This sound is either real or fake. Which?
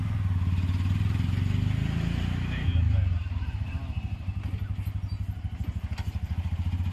real